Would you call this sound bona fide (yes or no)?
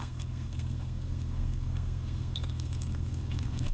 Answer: no